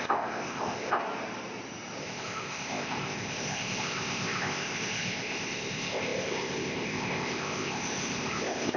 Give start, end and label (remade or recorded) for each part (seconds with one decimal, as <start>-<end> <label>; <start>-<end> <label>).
0.0-1.0 remade; 1.0-2.0 recorded; 2.0-8.8 remade